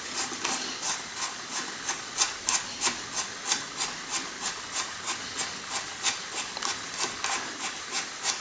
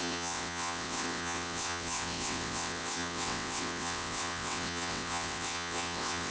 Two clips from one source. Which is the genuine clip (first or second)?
first